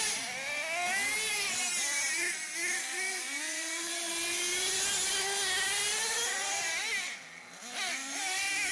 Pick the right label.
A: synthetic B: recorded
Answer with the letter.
B